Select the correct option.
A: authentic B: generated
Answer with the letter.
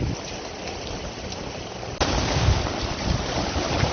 A